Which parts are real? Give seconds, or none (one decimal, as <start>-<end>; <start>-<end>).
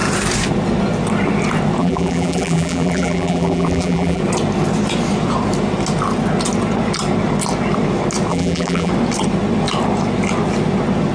0.0-1.8; 4.2-8.3; 8.9-11.1